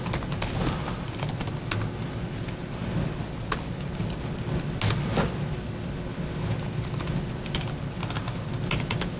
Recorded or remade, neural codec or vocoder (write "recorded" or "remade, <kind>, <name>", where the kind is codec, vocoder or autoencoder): recorded